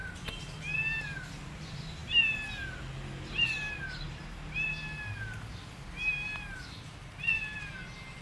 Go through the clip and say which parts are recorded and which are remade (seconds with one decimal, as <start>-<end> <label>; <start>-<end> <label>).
0.0-8.2 recorded